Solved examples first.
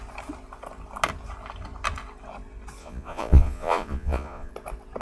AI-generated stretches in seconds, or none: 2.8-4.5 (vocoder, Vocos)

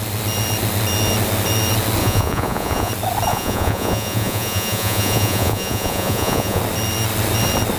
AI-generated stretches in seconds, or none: 2.0-2.9 (vocoder, Vocos); 3.3-6.6

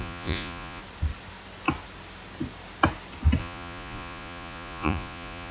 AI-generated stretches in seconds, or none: 0.0-0.8 (vocoder, Vocos); 3.4-5.5

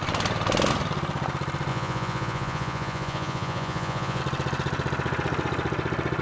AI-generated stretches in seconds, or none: 1.7-4.2 (vocoder, Vocos)

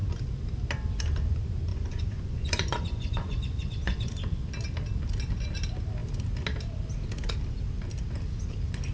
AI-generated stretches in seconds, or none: 1.7-4.2 (vocoder, Vocos)